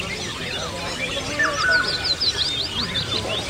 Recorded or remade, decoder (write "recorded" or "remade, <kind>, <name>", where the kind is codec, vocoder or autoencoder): recorded